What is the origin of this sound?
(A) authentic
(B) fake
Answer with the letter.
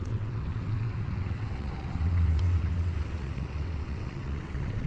B